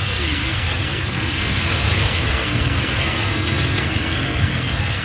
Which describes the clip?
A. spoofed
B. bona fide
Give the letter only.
A